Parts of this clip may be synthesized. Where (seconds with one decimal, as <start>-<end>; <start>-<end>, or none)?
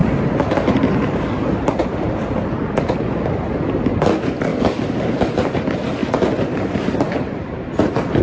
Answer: 0.0-2.1; 4.5-5.6; 6.0-7.7